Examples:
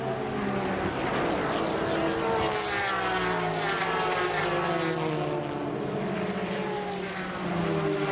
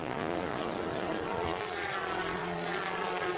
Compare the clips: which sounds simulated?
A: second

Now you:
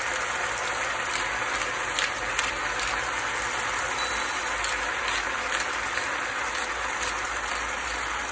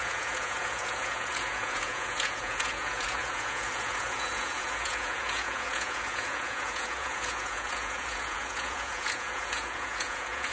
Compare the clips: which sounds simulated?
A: second